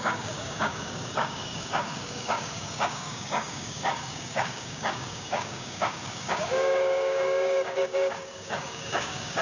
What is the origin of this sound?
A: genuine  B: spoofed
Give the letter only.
B